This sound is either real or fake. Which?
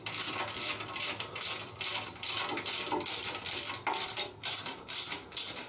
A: fake